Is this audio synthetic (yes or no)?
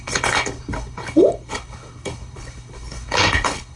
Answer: yes